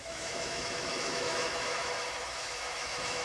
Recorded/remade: remade